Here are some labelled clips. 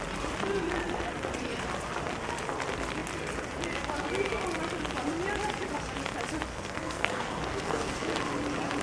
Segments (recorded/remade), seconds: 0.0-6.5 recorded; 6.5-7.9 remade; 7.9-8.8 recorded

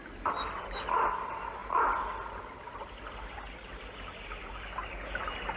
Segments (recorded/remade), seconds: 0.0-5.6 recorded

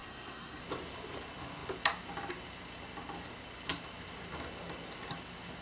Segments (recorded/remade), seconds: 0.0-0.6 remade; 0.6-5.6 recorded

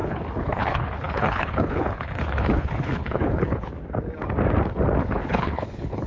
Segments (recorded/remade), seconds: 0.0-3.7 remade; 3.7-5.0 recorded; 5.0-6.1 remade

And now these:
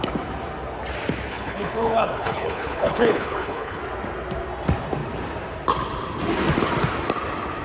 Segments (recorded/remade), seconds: 0.0-1.3 recorded; 1.3-3.8 remade; 3.8-7.6 recorded

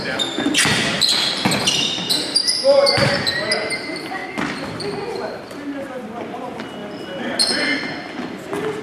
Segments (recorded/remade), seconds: 0.0-8.8 recorded

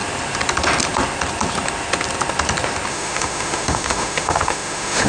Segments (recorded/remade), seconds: 0.0-2.9 recorded; 2.9-5.1 remade